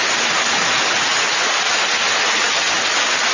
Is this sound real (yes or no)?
yes